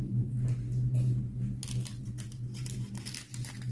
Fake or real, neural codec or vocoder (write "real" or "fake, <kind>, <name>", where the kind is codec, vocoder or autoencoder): real